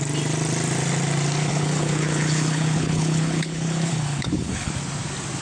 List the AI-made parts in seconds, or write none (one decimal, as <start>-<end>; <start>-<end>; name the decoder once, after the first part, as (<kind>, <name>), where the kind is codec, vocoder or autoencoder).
1.5-4.7 (codec, HILCodec)